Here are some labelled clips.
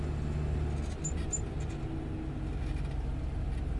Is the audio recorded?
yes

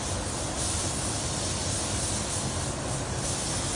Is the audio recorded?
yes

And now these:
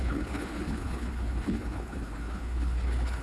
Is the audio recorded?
no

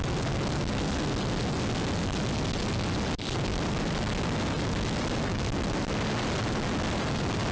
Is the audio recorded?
yes